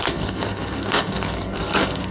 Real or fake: fake